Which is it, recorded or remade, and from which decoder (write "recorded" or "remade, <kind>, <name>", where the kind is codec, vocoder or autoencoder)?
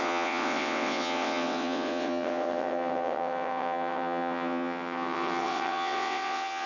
remade, vocoder, WaveNeXt